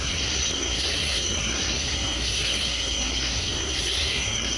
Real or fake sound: fake